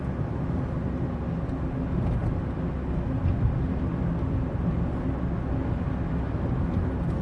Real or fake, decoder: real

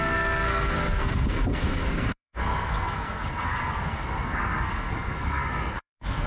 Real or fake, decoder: fake, codec, SNAC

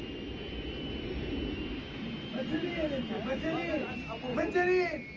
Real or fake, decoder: real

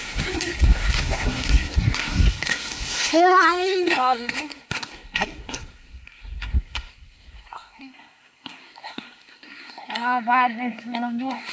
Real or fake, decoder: fake, codec, SNAC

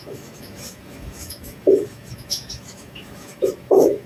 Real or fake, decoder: fake, autoencoder, DAC-VAE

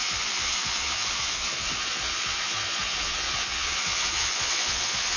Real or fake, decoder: fake, vocoder, Vocos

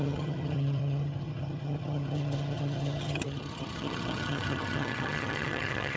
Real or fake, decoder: fake, vocoder, HiFi-GAN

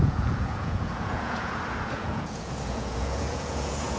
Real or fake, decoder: fake, vocoder, Vocos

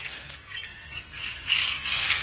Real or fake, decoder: fake, codec, SNAC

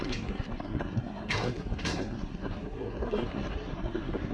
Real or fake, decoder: fake, codec, SNAC